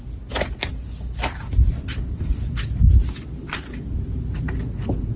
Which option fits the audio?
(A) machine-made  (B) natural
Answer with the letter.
B